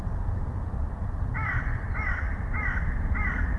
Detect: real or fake real